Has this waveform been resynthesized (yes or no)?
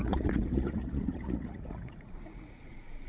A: yes